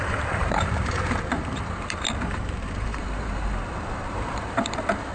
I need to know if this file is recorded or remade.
remade